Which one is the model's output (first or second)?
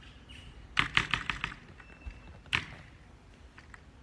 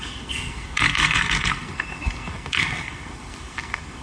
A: second